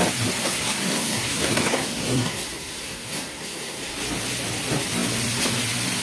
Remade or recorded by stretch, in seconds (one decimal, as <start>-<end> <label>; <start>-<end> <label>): 0.0-0.4 recorded; 0.4-4.0 remade; 4.0-6.0 recorded